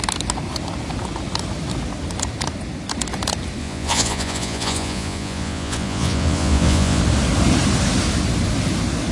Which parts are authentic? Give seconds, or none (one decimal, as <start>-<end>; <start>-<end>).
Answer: 0.0-3.6; 7.0-9.1